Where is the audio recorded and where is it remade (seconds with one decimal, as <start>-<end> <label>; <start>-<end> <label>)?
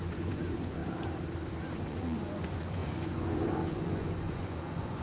0.0-0.8 remade; 0.8-1.6 recorded; 1.6-5.0 remade